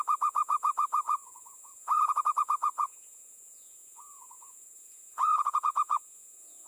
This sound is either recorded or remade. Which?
remade